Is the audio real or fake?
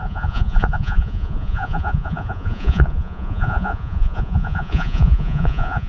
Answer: fake